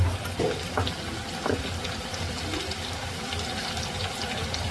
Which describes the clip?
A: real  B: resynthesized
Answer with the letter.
A